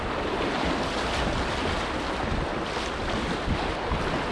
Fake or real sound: real